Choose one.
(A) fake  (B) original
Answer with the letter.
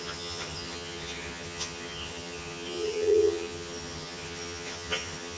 A